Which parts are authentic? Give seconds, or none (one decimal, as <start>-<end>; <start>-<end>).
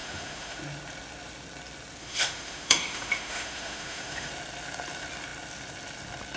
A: 0.6-2.0; 4.3-6.4